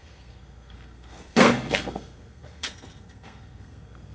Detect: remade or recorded remade